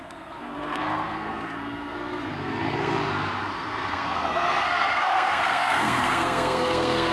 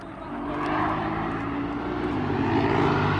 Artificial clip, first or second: first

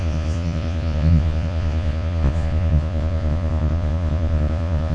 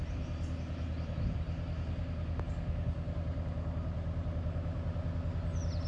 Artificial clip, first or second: first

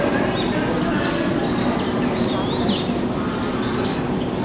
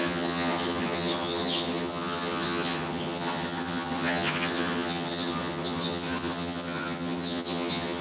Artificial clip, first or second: second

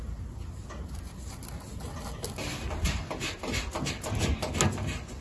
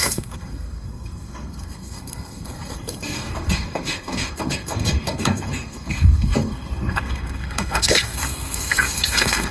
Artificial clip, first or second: second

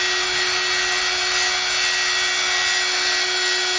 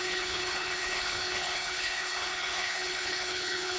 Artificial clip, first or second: second